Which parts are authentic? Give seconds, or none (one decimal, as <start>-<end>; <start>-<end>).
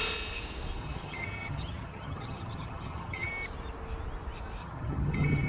0.0-0.8; 3.3-4.6